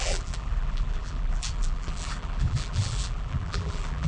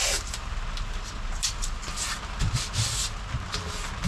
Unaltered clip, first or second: second